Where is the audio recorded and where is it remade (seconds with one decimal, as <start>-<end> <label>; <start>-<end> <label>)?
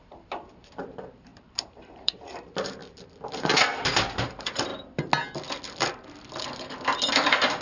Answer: 0.0-2.8 remade; 2.8-3.3 recorded; 3.3-4.7 remade; 4.7-7.1 recorded; 7.1-7.6 remade